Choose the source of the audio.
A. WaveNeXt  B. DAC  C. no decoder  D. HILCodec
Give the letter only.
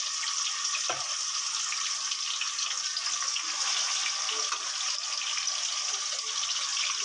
C